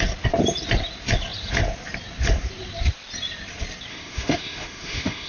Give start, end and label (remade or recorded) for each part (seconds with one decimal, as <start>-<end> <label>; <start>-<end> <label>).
0.0-3.9 recorded; 3.9-5.3 remade